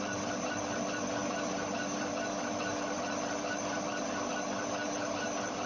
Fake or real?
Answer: fake